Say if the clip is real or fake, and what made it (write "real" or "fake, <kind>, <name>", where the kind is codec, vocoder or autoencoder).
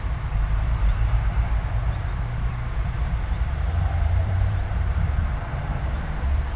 fake, vocoder, BigVGAN v2